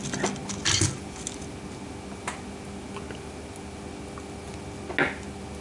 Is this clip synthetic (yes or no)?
no